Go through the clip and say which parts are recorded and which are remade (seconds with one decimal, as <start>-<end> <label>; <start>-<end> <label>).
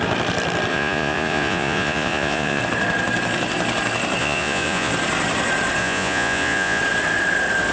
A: 0.0-0.7 recorded; 0.7-2.6 remade; 2.6-4.2 recorded; 4.2-4.9 remade; 4.9-5.8 recorded; 5.8-6.8 remade; 6.8-7.7 recorded